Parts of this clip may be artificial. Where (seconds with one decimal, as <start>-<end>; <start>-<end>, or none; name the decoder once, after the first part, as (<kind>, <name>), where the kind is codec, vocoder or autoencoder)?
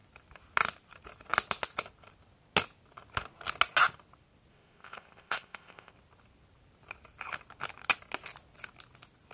4.5-5.9 (codec, ZipCodec)